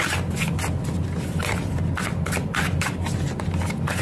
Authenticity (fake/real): real